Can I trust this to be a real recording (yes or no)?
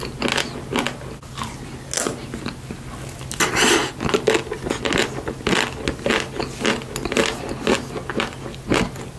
yes